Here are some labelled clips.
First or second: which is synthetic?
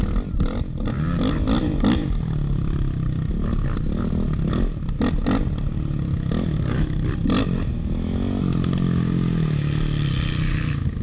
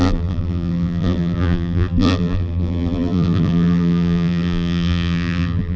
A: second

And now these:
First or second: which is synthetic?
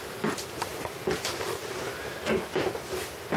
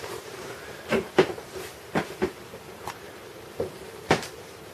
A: second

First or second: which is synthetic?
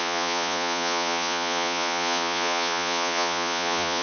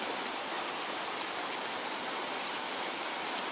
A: first